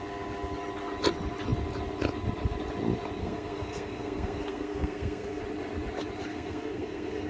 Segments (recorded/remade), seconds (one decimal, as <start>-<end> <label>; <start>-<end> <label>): 0.0-3.2 recorded; 3.2-5.4 remade; 5.4-6.3 recorded; 6.3-7.3 remade